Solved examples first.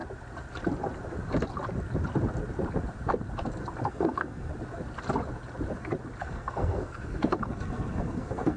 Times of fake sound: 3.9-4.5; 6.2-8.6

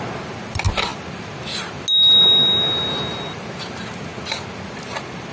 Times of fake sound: none

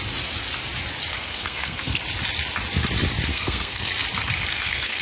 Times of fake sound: 1.1-2.0; 3.3-3.9; 4.5-5.0

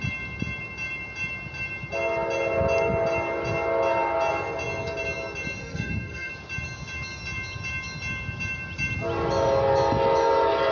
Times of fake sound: 5.6-6.3

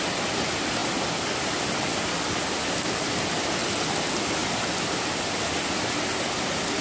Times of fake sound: none